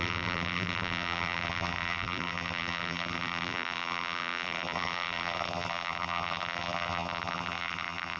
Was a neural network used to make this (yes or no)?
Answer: yes